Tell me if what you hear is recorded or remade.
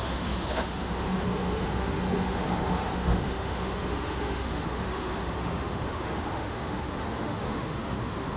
remade